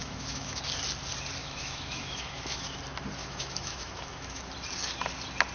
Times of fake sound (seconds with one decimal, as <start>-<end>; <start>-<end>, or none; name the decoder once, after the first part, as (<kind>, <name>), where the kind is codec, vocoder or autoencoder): 0.0-0.6 (autoencoder, DAC-VAE); 1.4-2.8; 3.2-4.4